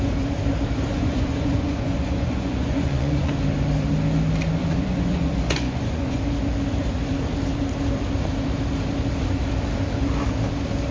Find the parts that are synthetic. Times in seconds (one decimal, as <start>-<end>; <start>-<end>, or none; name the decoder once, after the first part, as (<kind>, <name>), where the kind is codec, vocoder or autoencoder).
0.9-3.3 (vocoder, Vocos); 4.6-6.2